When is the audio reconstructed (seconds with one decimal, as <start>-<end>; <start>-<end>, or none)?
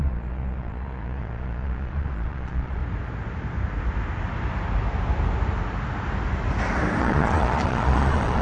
0.0-2.8; 7.0-8.4